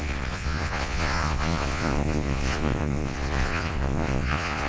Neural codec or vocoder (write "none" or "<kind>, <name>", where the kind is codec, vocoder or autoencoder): vocoder, Vocos